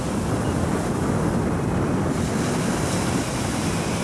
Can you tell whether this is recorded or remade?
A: recorded